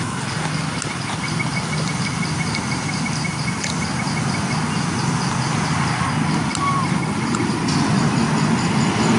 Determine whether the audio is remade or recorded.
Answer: recorded